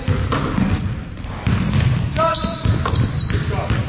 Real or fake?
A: fake